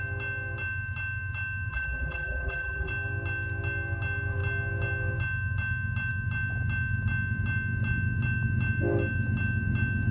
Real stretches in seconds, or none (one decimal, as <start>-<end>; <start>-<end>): 0.0-1.7; 2.9-10.1